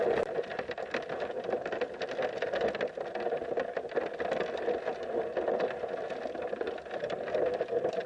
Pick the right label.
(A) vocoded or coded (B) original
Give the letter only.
B